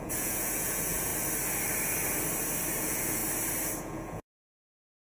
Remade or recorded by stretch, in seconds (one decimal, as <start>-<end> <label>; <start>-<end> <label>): 0.0-1.1 remade; 1.1-2.8 recorded; 2.8-3.2 remade; 3.2-3.8 recorded; 3.8-5.0 remade